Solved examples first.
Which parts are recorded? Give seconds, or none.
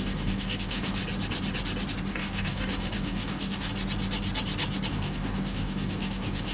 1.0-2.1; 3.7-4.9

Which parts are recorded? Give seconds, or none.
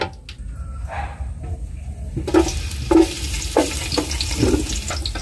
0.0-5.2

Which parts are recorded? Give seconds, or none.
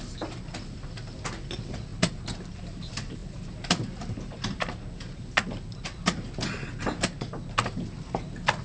0.0-8.6